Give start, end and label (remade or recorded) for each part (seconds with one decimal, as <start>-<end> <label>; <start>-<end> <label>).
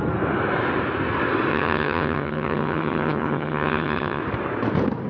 0.0-1.5 recorded; 1.5-4.2 remade; 4.2-5.1 recorded